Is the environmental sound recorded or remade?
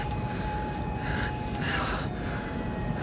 remade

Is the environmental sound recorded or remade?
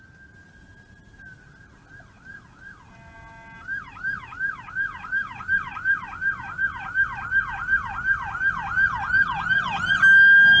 recorded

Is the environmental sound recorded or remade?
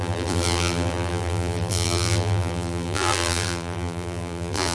remade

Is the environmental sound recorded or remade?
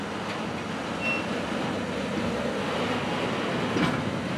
recorded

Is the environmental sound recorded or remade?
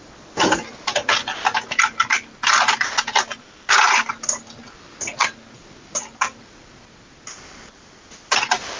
recorded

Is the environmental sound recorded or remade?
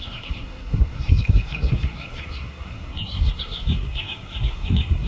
remade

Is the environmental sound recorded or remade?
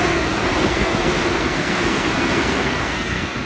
remade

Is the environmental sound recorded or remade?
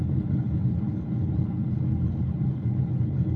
remade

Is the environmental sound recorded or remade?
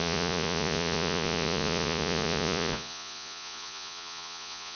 remade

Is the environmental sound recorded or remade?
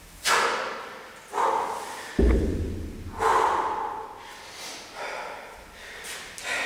recorded